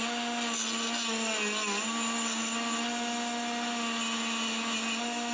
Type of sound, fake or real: real